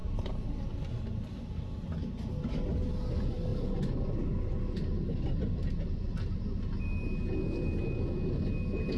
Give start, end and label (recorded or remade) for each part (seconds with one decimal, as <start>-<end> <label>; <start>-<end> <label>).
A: 0.0-9.0 recorded